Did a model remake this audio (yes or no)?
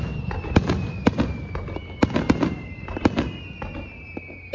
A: no